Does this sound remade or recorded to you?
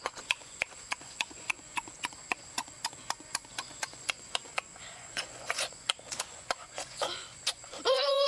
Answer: remade